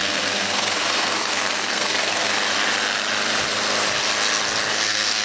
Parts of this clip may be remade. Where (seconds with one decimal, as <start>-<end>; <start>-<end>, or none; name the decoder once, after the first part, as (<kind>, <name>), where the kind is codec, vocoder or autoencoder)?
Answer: 0.0-2.3 (codec, SNAC); 4.7-5.2